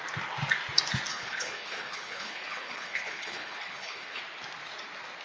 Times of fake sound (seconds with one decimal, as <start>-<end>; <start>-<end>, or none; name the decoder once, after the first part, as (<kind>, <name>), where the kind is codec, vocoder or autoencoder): 1.1-4.2 (codec, HILCodec)